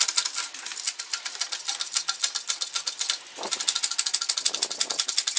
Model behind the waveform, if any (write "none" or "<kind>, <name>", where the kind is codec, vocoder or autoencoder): none